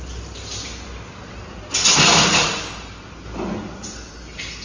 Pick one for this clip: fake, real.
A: real